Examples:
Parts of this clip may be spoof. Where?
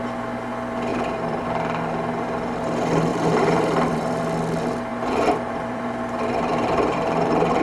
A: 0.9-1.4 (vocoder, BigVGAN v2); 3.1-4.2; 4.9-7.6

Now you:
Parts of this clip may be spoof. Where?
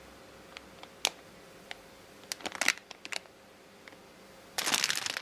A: 2.8-4.1 (vocoder, BigVGAN v2)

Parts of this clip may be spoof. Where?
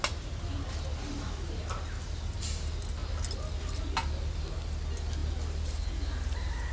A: none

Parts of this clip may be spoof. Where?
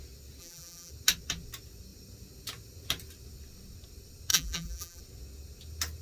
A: 0.4-0.9 (vocoder, BigVGAN v2); 4.3-5.0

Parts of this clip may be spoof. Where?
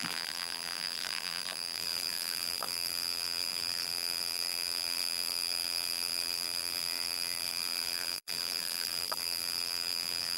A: 0.0-10.4 (vocoder, BigVGAN v2)